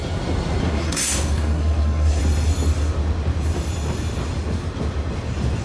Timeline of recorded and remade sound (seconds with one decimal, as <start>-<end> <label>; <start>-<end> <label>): 0.0-0.6 recorded; 0.6-2.2 remade; 2.2-5.6 recorded